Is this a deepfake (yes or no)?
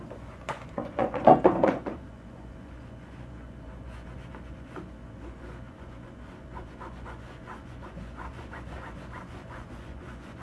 yes